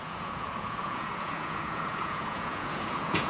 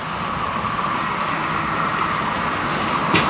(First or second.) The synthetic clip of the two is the first